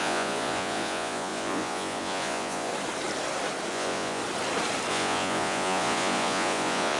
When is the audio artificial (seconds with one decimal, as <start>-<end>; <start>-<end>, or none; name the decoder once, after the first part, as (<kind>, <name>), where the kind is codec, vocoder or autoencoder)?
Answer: 0.0-2.7 (vocoder, Vocos); 3.7-4.2; 4.9-7.0